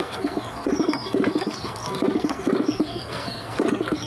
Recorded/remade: remade